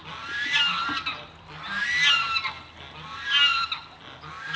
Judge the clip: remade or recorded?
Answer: recorded